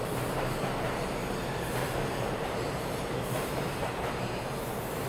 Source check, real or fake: fake